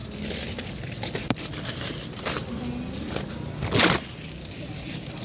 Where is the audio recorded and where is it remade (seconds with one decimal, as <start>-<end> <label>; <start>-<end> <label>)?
0.0-5.2 recorded